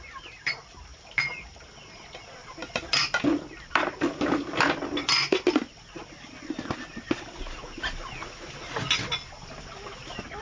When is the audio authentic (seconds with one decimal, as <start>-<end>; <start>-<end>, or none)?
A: 0.0-10.4